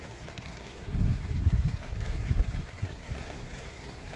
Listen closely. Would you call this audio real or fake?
fake